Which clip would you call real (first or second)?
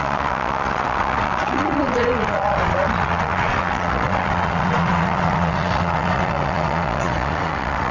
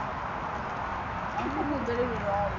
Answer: second